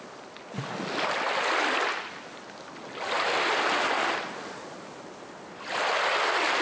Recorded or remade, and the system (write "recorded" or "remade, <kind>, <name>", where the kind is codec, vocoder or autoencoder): recorded